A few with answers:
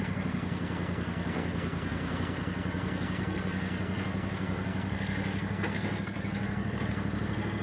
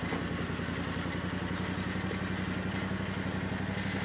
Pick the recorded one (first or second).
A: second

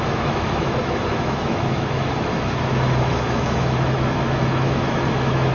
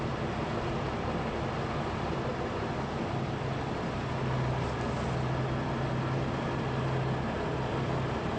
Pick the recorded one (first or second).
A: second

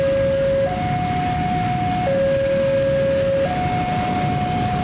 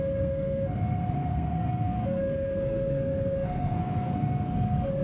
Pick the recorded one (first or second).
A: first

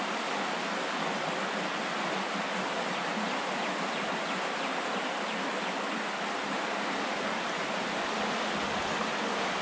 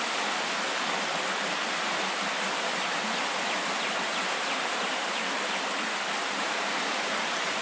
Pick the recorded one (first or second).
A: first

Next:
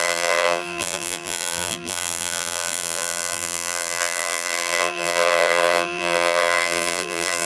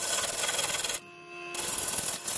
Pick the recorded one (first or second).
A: second